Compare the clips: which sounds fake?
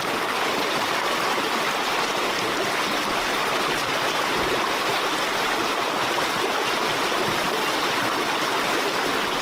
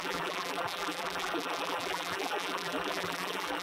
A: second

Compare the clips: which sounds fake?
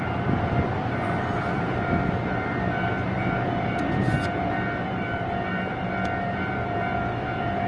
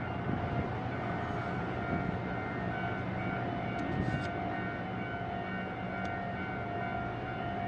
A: first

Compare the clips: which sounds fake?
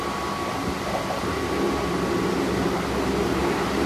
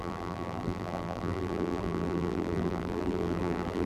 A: second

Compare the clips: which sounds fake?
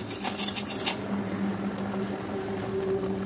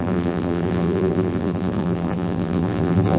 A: second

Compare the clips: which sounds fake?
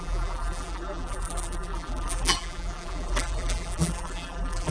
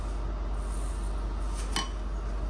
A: first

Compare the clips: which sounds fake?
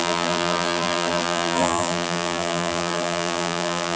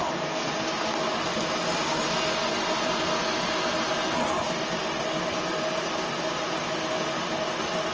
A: first